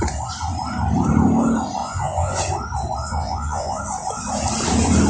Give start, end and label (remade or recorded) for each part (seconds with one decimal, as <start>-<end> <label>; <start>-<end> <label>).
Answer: 0.0-1.8 recorded; 1.8-2.4 remade; 2.4-3.0 recorded; 3.0-3.8 remade; 3.8-5.1 recorded